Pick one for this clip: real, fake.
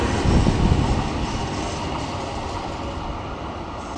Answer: real